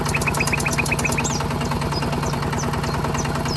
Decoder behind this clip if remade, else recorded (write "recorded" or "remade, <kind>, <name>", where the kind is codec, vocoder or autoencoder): recorded